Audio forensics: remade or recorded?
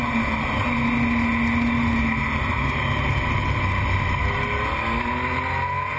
recorded